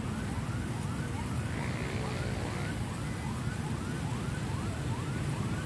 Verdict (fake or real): real